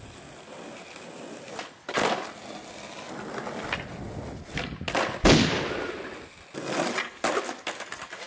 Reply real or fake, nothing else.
real